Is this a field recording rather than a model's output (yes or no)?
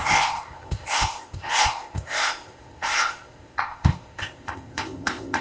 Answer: no